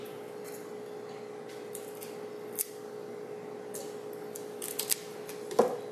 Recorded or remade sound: recorded